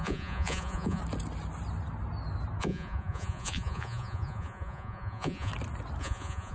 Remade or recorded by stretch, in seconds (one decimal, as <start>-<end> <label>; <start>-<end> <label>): 0.0-1.0 remade; 1.0-2.6 recorded; 2.6-5.5 remade; 5.5-6.0 recorded; 6.0-6.5 remade